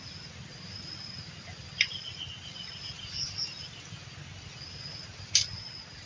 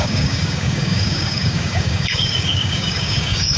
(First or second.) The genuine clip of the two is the first